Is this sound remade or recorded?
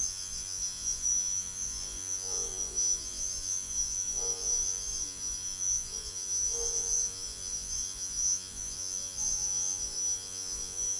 remade